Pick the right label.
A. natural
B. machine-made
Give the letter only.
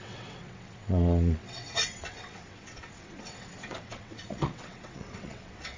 B